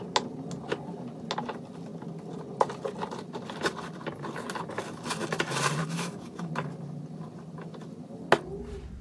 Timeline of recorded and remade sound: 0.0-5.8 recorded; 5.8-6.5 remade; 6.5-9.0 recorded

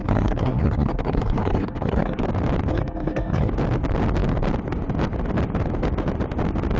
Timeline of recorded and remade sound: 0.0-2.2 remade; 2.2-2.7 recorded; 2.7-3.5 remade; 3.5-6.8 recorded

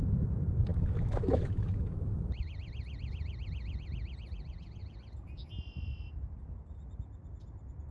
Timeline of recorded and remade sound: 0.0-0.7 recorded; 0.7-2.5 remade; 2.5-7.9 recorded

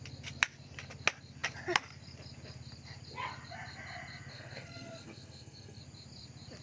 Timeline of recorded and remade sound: 0.0-4.3 recorded; 4.3-5.8 remade; 5.8-6.6 recorded

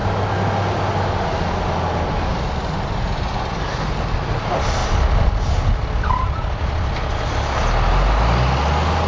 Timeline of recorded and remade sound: 0.0-9.1 recorded

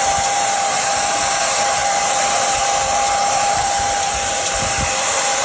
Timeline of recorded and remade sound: 0.0-5.4 remade

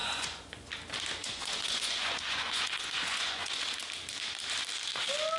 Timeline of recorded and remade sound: 0.0-0.7 remade; 0.7-1.2 recorded; 1.2-3.8 remade; 3.8-5.4 recorded